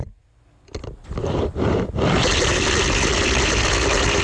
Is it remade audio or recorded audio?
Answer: recorded